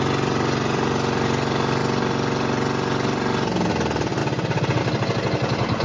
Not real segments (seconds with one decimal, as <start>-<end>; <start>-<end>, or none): none

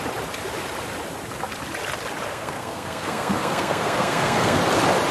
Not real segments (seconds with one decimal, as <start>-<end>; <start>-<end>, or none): 2.3-4.6